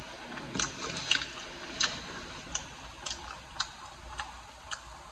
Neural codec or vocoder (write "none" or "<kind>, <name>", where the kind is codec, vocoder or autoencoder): none